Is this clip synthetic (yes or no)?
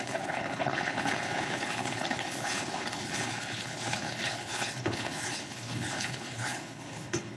yes